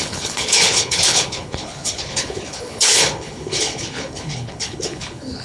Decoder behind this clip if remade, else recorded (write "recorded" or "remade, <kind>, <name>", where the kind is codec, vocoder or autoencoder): remade, codec, HILCodec